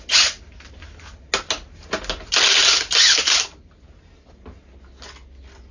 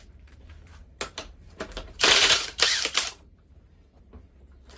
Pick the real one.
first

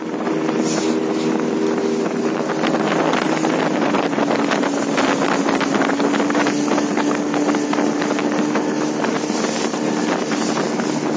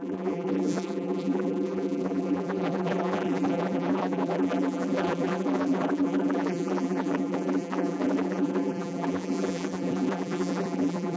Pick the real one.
first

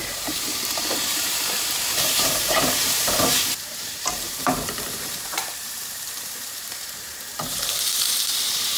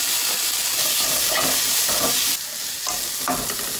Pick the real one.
second